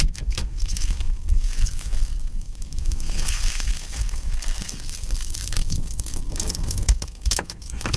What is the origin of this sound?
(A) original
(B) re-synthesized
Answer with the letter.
B